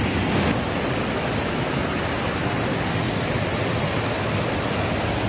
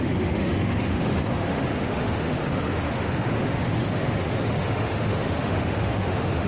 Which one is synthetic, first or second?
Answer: second